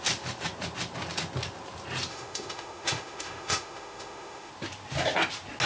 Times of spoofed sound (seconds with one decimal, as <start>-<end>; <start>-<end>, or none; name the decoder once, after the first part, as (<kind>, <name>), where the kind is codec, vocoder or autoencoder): 2.1-4.5 (autoencoder, DAC-VAE)